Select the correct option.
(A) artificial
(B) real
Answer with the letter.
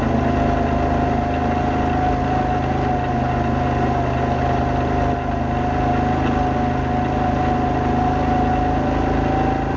B